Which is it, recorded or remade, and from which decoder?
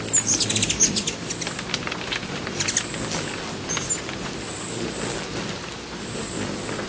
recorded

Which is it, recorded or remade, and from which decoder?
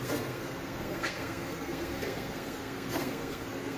remade, codec, SNAC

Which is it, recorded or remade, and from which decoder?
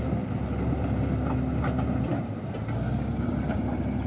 recorded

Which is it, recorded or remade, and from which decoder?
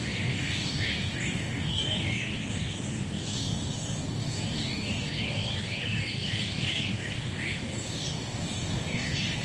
remade, codec, DAC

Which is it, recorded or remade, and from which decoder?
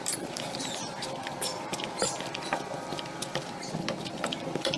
remade, vocoder, BigVGAN v2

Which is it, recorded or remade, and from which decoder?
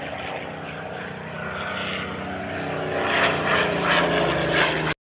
recorded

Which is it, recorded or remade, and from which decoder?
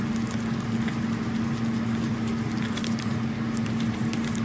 recorded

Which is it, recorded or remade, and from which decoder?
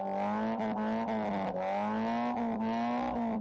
recorded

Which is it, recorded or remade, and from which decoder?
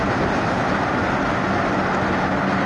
recorded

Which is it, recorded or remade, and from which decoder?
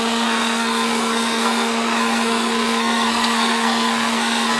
remade, codec, SNAC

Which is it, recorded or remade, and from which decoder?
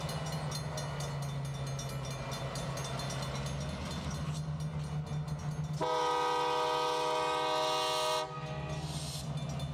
recorded